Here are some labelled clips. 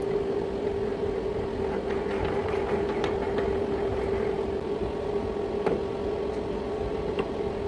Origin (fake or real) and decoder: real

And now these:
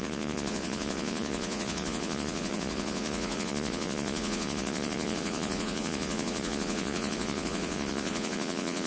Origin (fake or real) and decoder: fake, vocoder, Vocos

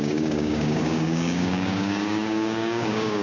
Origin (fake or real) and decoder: fake, codec, DAC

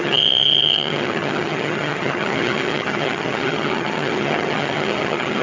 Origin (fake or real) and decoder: fake, vocoder, HiFi-GAN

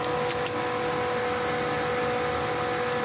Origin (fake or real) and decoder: real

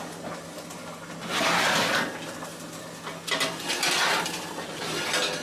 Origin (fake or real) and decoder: real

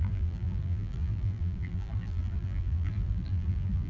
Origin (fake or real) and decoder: fake, vocoder, BigVGAN v2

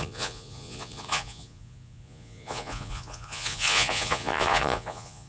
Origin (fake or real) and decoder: fake, vocoder, Vocos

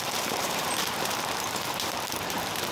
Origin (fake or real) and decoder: fake, vocoder, BigVGAN v2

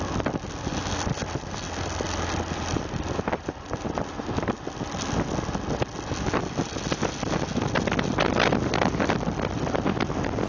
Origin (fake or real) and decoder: real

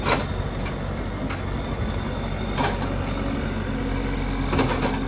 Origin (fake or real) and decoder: real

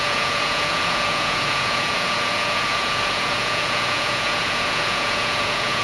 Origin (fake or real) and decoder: fake, vocoder, Vocos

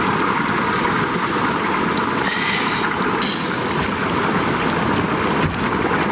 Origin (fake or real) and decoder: real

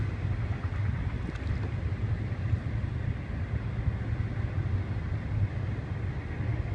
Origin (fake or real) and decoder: real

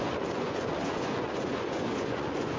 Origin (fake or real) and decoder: fake, vocoder, Vocos